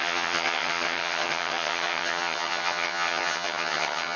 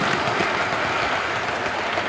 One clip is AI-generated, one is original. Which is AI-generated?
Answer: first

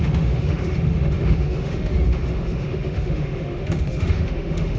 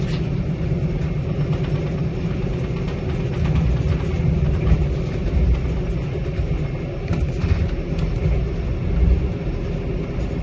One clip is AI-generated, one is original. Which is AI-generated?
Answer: first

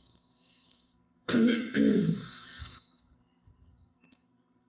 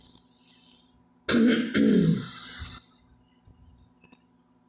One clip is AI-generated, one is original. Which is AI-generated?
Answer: first